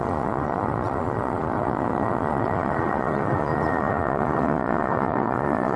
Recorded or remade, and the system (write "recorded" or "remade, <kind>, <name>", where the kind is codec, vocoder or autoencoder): remade, vocoder, Vocos